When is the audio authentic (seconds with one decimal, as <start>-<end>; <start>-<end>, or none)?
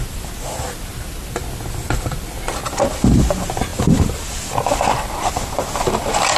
0.0-6.4